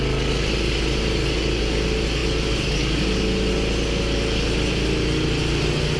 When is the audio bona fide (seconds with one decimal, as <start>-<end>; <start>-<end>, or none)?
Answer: 0.0-6.0

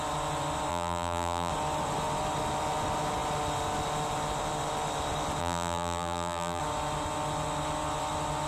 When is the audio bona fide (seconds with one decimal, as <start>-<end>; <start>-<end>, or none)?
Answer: 0.0-0.7; 1.5-5.4; 6.6-8.5

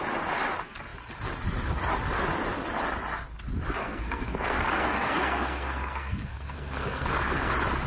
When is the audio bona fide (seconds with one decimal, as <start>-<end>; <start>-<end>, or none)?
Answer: 0.0-3.8; 7.5-7.9

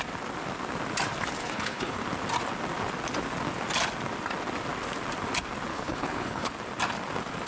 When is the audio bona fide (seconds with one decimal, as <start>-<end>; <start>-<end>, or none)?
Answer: 0.0-1.4; 2.0-5.7; 6.5-7.5

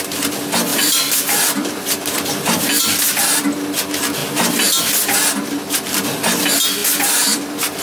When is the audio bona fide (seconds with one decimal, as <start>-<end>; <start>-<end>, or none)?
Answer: 0.0-0.7; 2.8-7.8

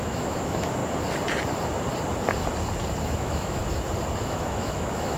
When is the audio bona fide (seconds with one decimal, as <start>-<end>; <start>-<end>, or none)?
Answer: 0.8-3.0; 3.6-4.2